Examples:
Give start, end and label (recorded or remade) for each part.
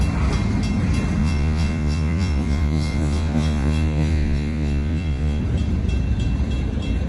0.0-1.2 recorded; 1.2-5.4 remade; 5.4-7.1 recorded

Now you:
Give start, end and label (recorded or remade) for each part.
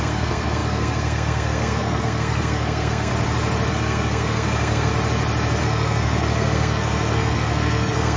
0.0-3.1 remade; 3.1-3.7 recorded; 3.7-4.9 remade; 4.9-5.6 recorded; 5.6-8.2 remade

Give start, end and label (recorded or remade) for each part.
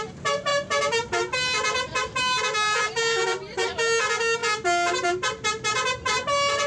0.0-6.7 recorded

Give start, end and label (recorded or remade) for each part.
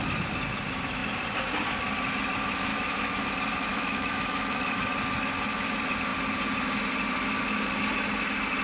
0.0-2.7 recorded; 2.7-3.2 remade; 3.2-3.7 recorded; 3.7-4.8 remade; 4.8-8.6 recorded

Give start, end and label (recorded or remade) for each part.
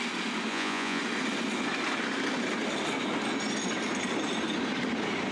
0.0-0.5 recorded; 0.5-1.0 remade; 1.0-5.3 recorded